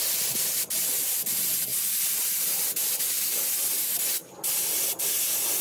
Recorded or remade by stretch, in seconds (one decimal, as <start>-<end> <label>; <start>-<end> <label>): 0.0-5.6 recorded